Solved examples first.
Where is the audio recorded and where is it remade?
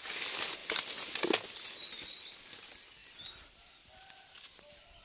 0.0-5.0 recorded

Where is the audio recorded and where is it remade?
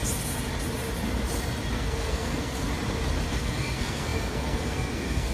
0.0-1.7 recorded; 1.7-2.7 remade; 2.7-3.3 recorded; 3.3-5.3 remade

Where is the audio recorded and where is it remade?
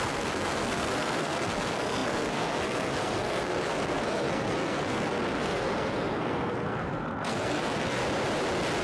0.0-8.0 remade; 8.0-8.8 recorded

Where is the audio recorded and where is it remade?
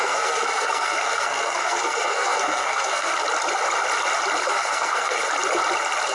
0.0-3.1 remade; 3.1-4.5 recorded; 4.5-5.2 remade; 5.2-6.1 recorded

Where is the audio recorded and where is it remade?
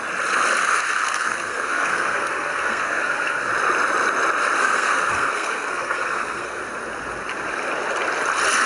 0.0-0.6 recorded; 0.6-3.5 remade; 3.5-4.6 recorded; 4.6-6.6 remade; 6.6-8.7 recorded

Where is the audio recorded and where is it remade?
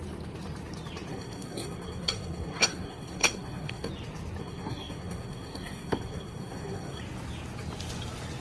0.0-1.1 recorded; 1.1-3.9 remade; 3.9-4.4 recorded; 4.4-7.0 remade; 7.0-8.4 recorded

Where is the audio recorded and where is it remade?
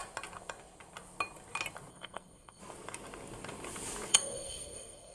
0.0-1.9 recorded; 1.9-2.6 remade; 2.6-4.1 recorded; 4.1-5.1 remade